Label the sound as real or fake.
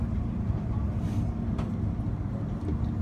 real